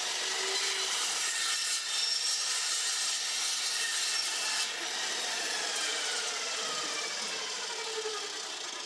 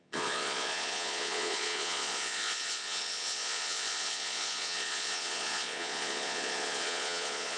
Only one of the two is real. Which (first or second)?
first